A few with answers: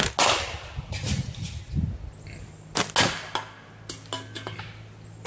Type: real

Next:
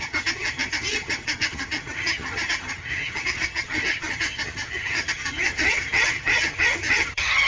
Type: fake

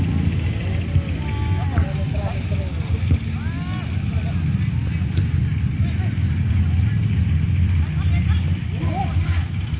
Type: real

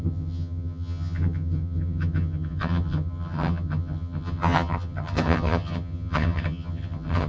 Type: fake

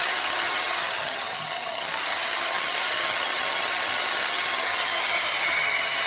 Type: fake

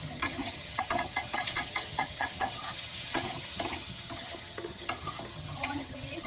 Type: fake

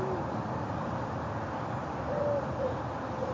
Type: real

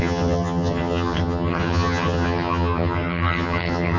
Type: fake